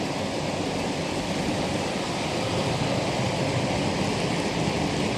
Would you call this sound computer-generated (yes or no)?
no